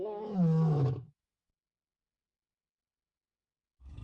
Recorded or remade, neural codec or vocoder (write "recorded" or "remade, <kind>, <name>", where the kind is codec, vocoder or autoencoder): remade, autoencoder, DAC-VAE